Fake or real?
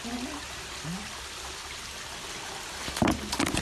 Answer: real